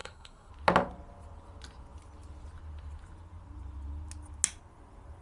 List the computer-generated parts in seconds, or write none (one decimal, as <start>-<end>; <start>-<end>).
0.0-0.5